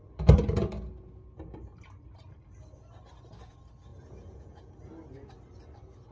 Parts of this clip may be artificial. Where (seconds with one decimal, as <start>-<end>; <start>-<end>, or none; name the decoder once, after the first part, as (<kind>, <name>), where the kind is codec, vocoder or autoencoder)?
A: 3.9-4.7 (vocoder, Vocos)